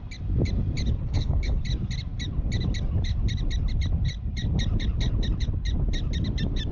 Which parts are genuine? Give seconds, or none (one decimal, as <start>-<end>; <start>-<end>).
0.0-1.0; 1.6-6.7